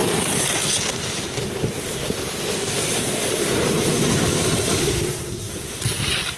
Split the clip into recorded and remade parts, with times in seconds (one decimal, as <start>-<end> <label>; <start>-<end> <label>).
0.0-4.8 recorded; 4.8-5.5 remade; 5.5-6.4 recorded